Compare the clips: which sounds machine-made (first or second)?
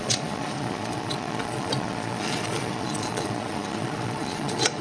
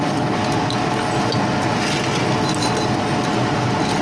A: first